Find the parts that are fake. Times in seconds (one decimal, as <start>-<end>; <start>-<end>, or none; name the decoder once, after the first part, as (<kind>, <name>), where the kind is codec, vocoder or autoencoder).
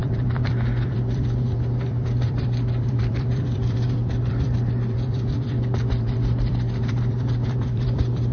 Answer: 0.0-8.3 (vocoder, BigVGAN v2)